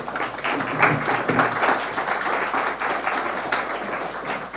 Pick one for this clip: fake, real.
real